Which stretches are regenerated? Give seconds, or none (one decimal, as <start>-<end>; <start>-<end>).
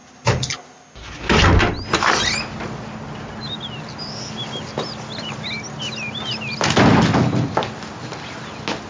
none